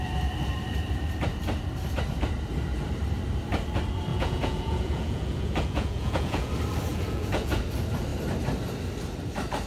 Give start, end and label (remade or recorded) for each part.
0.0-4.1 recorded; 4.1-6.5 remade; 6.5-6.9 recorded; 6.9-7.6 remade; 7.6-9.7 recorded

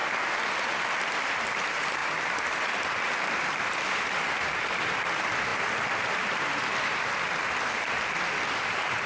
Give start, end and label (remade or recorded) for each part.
0.0-0.6 recorded; 0.6-9.1 remade

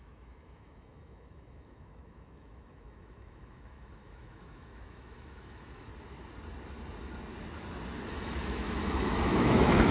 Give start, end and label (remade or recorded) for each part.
0.0-5.9 remade; 5.9-8.1 recorded; 8.1-9.9 remade

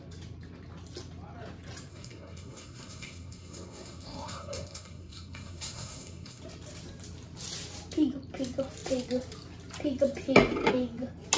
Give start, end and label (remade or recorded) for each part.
0.0-1.9 recorded; 1.9-6.4 remade; 6.4-11.4 recorded